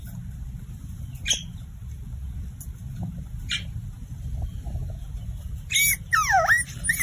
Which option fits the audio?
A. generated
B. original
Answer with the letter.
B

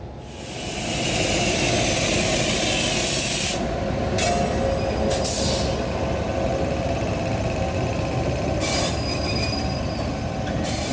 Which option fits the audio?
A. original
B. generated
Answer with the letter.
A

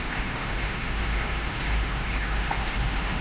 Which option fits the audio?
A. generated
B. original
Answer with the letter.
A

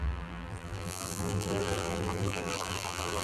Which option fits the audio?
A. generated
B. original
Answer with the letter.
A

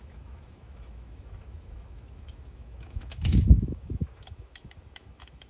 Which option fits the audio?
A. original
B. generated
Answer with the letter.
B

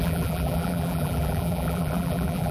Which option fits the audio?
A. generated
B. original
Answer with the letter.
A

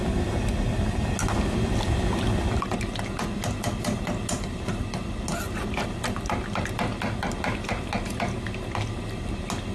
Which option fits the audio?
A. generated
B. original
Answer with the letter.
B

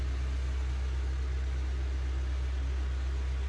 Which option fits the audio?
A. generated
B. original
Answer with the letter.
B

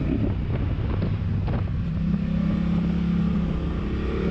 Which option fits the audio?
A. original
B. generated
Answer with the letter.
A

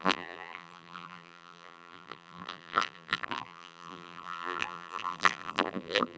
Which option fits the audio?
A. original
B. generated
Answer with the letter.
B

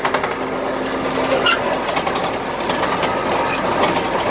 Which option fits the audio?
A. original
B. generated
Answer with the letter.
A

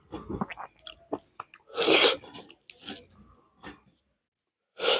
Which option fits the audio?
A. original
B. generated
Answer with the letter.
A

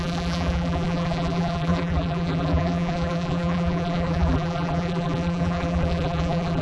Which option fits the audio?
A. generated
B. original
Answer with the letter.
A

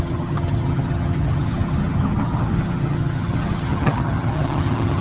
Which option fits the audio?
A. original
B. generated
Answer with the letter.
B